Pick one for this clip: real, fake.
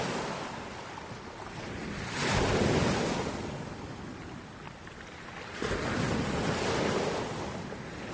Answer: real